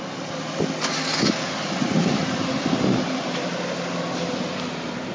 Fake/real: real